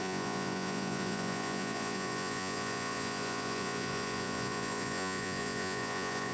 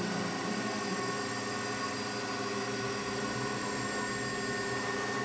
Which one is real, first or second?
second